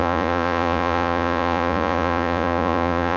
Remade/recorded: remade